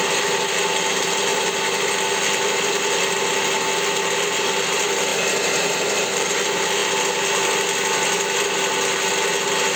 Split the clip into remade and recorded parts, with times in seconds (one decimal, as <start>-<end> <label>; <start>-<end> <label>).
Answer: 0.0-1.3 recorded; 1.3-2.0 remade; 2.0-5.1 recorded; 5.1-6.3 remade; 6.3-9.8 recorded